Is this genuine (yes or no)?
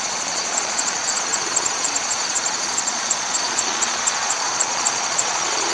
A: no